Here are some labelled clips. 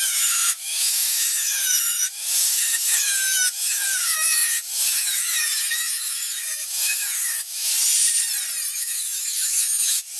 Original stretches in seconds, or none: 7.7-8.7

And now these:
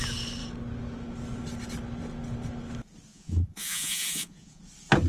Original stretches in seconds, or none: 0.0-3.1; 4.6-5.1